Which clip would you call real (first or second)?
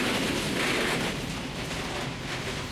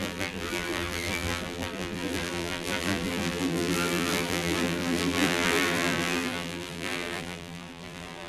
first